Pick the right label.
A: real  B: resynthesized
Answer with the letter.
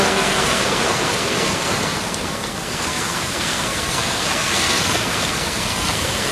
B